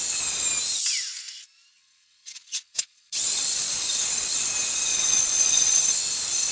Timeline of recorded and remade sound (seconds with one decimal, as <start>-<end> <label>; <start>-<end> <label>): 0.0-1.7 recorded; 1.7-4.5 remade; 4.5-4.9 recorded; 4.9-6.0 remade; 6.0-6.5 recorded